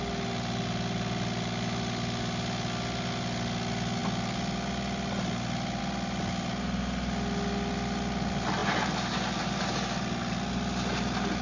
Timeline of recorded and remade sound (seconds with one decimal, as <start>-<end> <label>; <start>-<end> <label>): 0.0-11.4 recorded